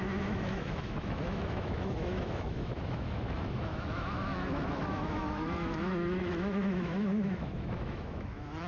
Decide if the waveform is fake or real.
fake